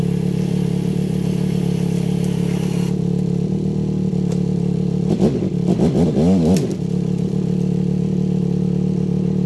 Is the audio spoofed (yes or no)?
no